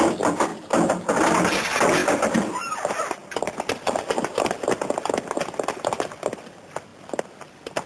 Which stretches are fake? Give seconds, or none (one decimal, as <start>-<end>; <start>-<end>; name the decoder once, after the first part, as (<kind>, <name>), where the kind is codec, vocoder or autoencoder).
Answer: none